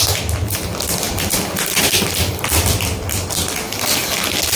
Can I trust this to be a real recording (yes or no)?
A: yes